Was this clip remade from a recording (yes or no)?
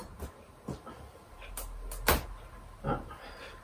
no